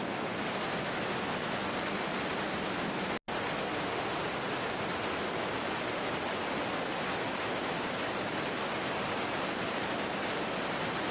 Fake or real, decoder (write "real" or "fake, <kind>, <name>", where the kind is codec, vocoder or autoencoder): real